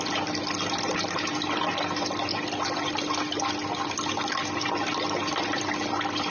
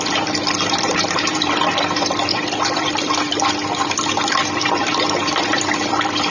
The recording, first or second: first